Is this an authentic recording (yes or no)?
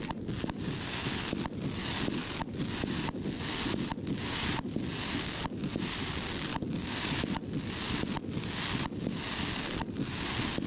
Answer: yes